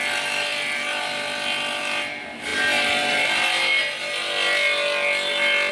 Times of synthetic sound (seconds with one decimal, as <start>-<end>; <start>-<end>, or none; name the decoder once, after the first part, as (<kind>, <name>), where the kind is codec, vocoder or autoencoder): none